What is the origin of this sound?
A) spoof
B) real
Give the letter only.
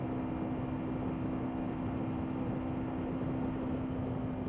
B